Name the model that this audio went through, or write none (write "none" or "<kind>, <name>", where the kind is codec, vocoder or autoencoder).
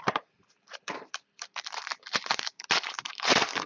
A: vocoder, BigVGAN v2